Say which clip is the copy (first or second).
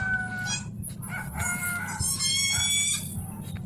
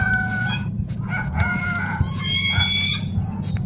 second